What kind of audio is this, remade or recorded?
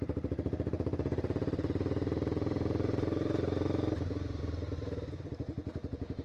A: remade